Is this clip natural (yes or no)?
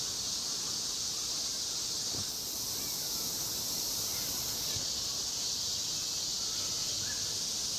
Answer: yes